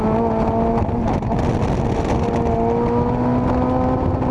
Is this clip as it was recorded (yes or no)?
yes